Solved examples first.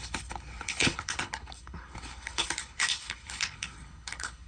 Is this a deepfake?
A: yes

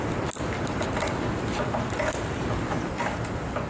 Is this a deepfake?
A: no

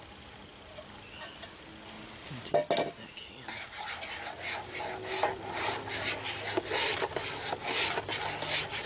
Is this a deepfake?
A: no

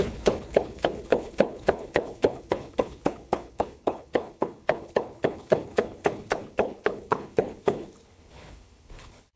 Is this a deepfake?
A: yes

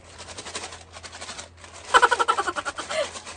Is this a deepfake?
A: no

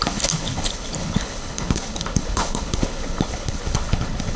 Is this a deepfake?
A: yes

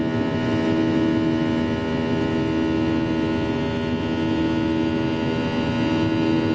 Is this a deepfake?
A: no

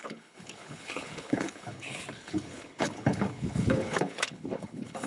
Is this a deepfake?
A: yes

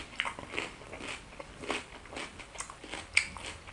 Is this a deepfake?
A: no